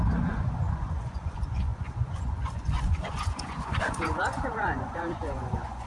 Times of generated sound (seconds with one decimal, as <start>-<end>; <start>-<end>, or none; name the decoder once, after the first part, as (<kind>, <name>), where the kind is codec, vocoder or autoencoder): 0.0-5.9 (vocoder, Vocos)